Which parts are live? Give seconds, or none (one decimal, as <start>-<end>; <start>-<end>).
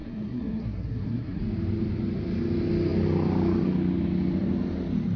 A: 1.4-5.2